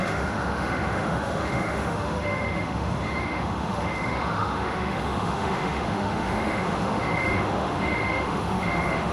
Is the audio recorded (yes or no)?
no